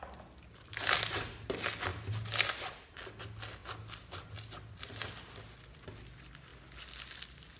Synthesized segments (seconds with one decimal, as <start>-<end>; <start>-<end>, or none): none